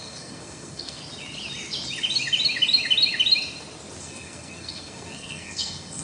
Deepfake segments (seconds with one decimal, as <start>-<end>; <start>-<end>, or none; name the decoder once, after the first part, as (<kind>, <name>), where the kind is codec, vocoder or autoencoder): 0.0-1.0 (codec, SNAC); 4.0-6.0